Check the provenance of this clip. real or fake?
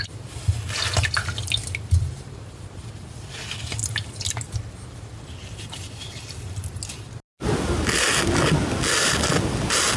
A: real